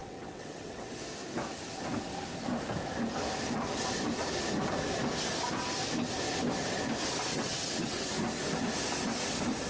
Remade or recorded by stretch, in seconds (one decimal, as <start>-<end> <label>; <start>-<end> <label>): 0.0-1.0 remade; 1.0-7.3 recorded; 7.3-8.1 remade; 8.1-9.7 recorded